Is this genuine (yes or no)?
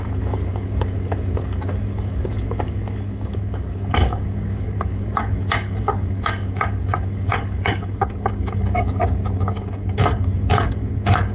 no